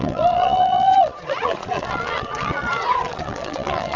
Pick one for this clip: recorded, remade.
remade